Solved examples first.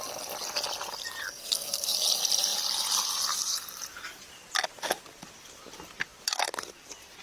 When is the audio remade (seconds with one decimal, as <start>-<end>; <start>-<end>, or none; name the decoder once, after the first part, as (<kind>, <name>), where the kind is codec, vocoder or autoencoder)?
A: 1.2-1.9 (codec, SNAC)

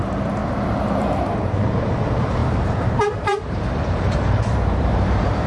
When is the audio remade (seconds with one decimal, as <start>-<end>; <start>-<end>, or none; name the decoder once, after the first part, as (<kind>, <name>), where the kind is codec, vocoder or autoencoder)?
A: 0.0-0.4 (vocoder, BigVGAN v2); 1.4-5.5

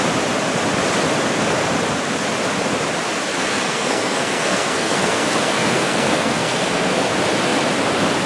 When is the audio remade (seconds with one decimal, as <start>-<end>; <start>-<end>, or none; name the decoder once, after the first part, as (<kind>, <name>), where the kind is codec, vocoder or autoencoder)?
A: 3.3-7.1 (codec, SNAC)